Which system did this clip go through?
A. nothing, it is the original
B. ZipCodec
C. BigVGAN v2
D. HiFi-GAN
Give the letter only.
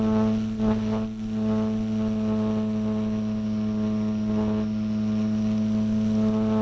A